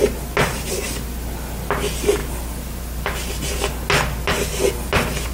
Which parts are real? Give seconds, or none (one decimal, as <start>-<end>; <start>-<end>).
0.0-5.3